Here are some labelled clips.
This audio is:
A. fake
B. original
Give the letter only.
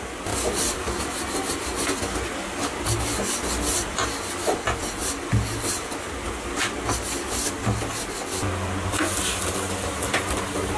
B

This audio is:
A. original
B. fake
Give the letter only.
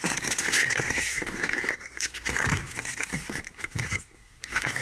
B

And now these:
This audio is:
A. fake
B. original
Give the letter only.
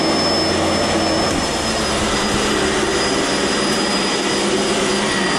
B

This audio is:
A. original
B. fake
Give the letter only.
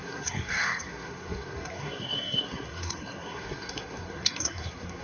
B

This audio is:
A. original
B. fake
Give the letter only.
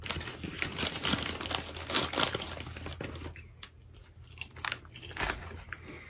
A